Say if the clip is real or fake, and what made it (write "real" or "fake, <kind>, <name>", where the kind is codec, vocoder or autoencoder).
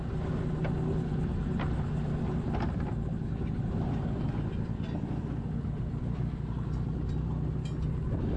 real